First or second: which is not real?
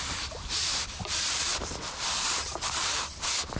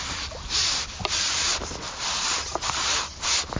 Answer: first